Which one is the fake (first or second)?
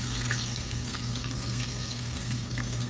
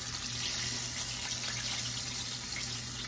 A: first